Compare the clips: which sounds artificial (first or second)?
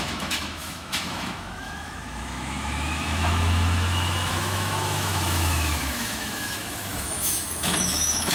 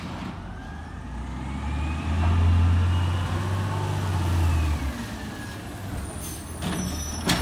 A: first